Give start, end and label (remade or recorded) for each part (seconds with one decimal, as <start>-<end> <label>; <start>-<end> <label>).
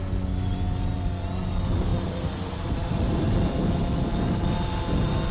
0.0-1.9 recorded; 1.9-3.5 remade; 3.5-5.3 recorded